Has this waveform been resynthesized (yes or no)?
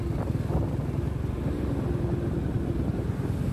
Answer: no